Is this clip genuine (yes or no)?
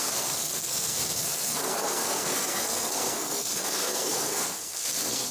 no